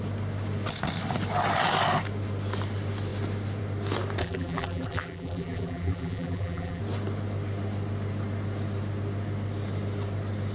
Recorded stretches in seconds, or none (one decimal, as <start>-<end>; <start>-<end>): 0.0-4.2; 6.8-10.5